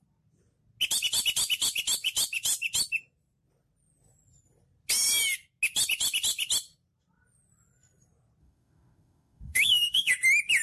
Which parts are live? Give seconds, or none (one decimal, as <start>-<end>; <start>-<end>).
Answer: 0.0-8.4; 10.1-10.6